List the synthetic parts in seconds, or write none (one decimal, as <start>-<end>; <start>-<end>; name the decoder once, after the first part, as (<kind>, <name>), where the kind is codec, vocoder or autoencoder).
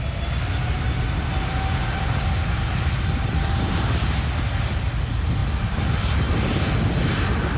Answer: none